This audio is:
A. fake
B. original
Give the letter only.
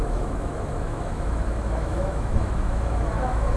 A